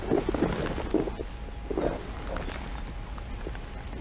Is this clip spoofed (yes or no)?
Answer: no